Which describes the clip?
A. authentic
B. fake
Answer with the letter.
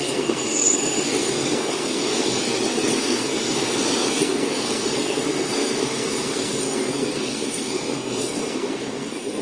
B